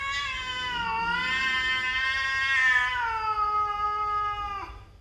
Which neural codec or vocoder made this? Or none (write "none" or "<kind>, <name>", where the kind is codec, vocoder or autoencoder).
none